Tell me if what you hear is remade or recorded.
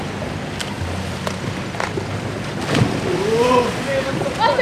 recorded